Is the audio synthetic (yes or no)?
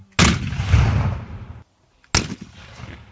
no